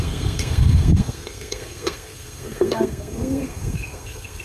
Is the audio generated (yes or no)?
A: yes